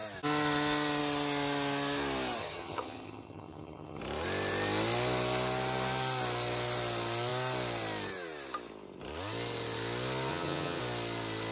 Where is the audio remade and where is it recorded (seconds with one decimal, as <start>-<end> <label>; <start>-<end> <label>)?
0.0-2.4 recorded; 2.4-4.0 remade; 4.0-10.3 recorded; 10.3-10.8 remade; 10.8-11.5 recorded